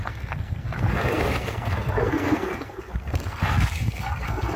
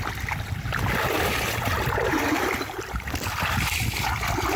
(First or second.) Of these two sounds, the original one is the second